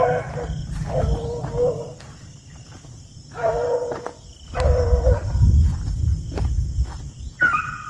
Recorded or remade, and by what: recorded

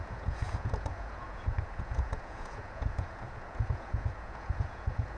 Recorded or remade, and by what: remade, vocoder, Vocos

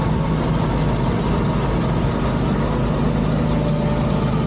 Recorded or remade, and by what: recorded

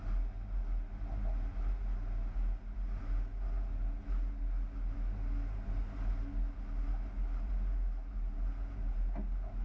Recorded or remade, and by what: recorded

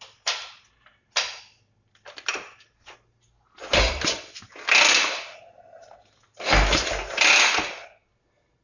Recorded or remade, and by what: recorded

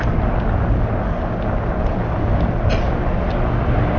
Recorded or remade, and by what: recorded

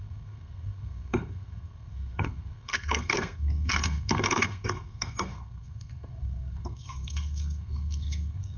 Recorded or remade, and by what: remade, codec, SNAC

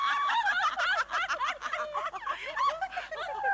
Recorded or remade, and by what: recorded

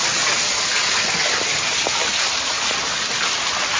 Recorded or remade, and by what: recorded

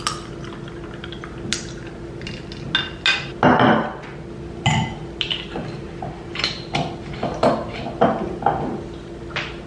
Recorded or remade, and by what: recorded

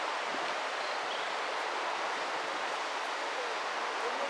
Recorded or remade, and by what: recorded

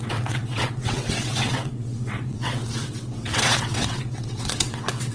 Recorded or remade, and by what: remade, vocoder, WaveNeXt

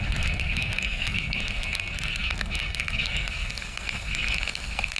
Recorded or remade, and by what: remade, codec, SNAC